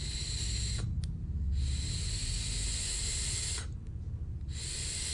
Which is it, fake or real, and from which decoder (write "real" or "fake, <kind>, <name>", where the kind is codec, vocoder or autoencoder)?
real